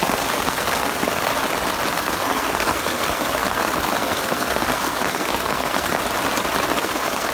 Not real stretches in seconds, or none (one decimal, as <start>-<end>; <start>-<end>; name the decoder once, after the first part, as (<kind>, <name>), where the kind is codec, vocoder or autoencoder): 0.0-1.3 (codec, SNAC); 1.9-6.0; 6.8-7.3